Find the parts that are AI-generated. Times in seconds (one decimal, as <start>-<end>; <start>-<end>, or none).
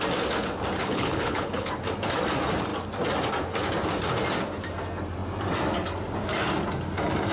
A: 0.8-1.7